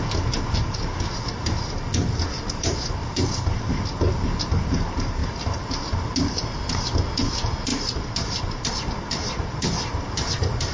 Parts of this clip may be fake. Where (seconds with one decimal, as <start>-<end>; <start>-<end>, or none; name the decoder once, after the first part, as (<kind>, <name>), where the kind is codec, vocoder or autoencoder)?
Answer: 3.0-3.6 (vocoder, BigVGAN v2); 5.2-5.8